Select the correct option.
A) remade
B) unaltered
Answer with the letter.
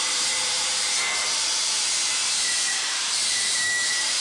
A